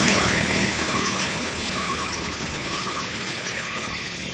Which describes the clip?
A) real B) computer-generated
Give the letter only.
B